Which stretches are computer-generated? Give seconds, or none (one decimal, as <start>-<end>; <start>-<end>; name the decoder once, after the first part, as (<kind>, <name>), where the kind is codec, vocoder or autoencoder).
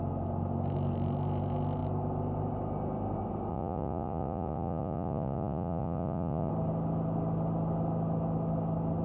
3.5-6.5 (vocoder, Vocos)